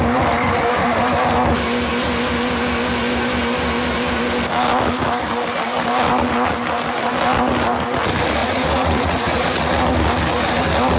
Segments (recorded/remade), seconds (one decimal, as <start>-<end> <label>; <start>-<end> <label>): 0.0-8.4 recorded; 8.4-9.7 remade; 9.7-11.0 recorded